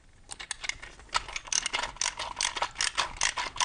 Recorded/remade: recorded